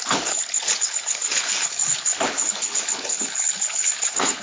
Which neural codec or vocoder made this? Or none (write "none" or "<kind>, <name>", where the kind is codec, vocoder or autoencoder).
codec, HILCodec